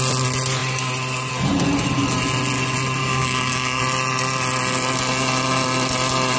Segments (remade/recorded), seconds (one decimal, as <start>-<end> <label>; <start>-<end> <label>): 0.0-3.0 recorded; 3.0-3.8 remade; 3.8-6.4 recorded